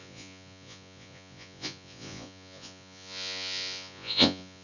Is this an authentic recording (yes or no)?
no